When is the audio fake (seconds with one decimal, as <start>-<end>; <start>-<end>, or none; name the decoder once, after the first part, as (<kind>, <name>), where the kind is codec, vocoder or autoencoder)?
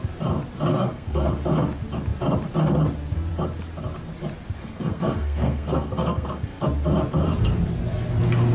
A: 0.7-1.3 (codec, SNAC); 4.6-6.6